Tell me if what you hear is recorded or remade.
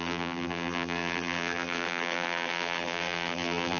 remade